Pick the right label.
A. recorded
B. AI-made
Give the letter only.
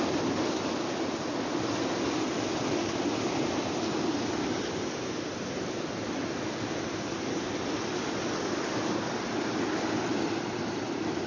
A